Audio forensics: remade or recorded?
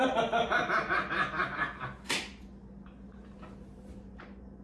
recorded